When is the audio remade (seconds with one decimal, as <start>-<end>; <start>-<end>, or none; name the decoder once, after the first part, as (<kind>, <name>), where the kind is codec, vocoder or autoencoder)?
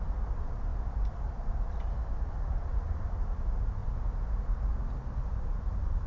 none